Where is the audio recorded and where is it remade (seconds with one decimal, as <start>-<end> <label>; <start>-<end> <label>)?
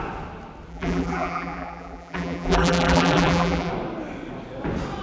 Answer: 0.0-0.7 recorded; 0.7-3.7 remade; 3.7-5.0 recorded